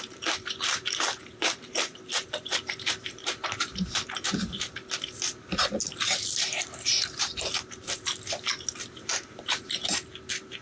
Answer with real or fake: fake